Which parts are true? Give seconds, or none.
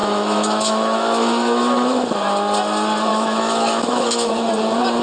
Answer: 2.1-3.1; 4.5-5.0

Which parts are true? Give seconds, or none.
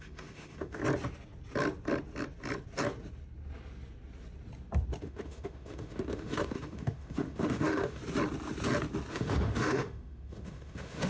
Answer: 0.8-5.0; 8.0-9.1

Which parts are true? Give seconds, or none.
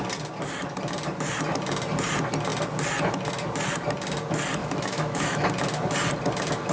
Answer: 0.0-4.6; 5.5-6.7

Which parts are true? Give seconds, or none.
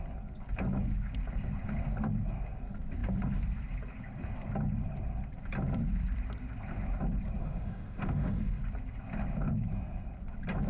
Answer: 0.0-7.4; 8.6-10.7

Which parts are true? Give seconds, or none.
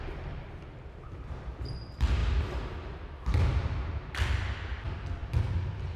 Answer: 0.0-6.0